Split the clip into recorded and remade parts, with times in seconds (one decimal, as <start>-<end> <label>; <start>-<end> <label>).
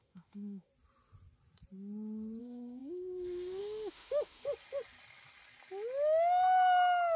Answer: 0.0-0.7 remade; 0.7-2.4 recorded; 2.4-4.4 remade; 4.4-7.2 recorded